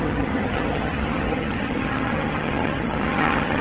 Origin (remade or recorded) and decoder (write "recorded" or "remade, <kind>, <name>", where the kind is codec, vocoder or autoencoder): remade, vocoder, HiFi-GAN